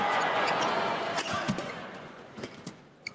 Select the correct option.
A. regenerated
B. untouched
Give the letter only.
A